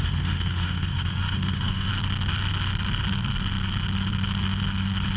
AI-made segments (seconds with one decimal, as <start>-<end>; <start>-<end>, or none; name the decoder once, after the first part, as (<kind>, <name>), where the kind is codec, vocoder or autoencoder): 0.0-1.9 (autoencoder, DAC-VAE)